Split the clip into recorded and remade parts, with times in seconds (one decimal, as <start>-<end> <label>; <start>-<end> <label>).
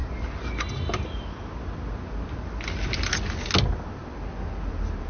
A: 0.0-5.1 recorded